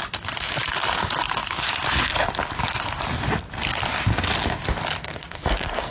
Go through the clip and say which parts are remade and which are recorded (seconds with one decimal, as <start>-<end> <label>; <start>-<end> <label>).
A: 0.0-5.0 recorded; 5.0-5.9 remade